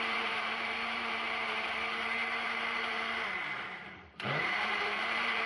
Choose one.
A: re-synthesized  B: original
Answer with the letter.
A